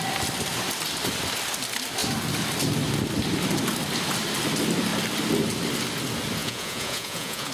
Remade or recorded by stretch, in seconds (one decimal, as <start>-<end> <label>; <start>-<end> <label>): 0.0-6.4 recorded; 6.4-7.5 remade